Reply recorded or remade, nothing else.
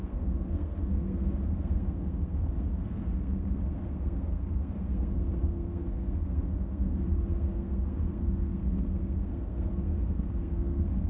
remade